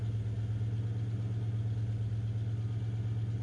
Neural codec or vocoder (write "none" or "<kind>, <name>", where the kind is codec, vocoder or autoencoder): none